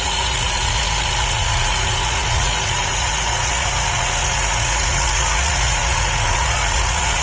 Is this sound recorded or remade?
remade